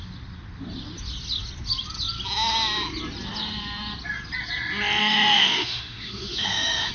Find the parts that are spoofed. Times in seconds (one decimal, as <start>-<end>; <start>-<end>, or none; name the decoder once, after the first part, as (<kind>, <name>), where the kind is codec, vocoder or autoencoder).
5.0-6.9 (autoencoder, DAC-VAE)